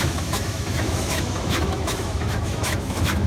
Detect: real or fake fake